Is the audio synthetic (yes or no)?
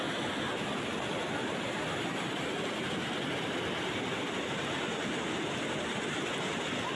no